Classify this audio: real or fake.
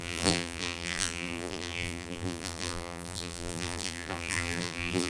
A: fake